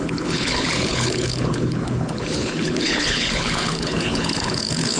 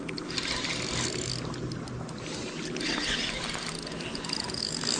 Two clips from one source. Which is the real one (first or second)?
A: second